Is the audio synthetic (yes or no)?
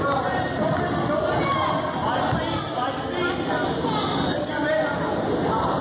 no